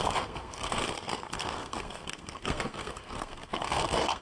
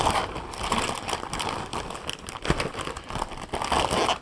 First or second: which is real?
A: second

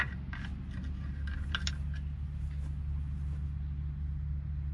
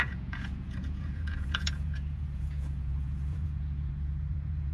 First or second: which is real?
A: first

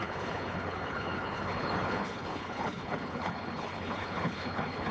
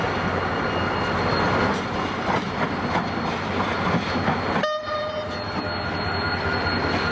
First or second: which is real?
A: second